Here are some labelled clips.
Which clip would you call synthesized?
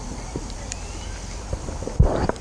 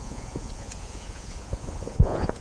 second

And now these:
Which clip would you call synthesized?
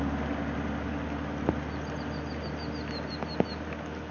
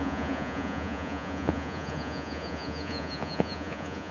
second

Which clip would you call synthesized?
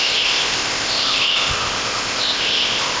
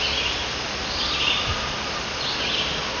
first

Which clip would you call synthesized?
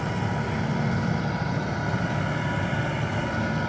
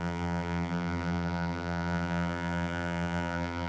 second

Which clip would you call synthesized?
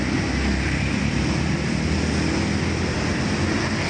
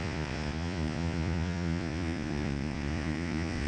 second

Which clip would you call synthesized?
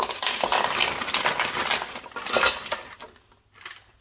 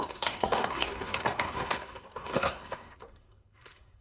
second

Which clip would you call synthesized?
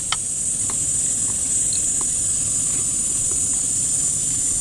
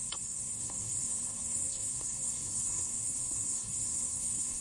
second